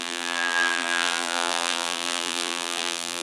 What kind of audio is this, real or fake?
fake